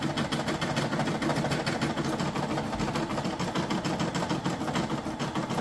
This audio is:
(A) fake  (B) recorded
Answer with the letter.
B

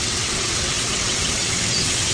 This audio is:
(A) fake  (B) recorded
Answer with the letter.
A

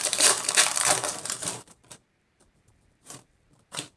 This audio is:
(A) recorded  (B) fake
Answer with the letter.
B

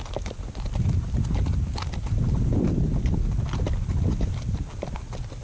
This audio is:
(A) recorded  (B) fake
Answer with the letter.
A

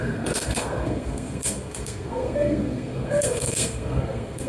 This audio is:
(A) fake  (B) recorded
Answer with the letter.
A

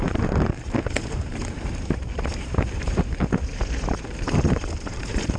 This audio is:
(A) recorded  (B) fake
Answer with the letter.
B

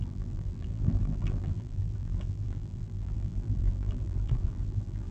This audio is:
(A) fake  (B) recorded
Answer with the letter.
A